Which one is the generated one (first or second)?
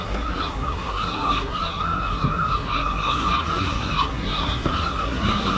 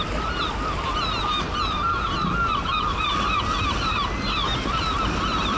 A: first